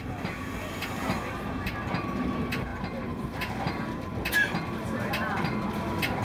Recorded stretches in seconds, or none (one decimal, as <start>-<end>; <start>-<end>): 0.0-2.7; 3.6-6.2